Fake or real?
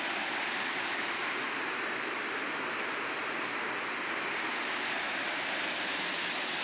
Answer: real